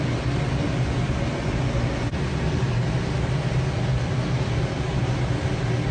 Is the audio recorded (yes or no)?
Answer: yes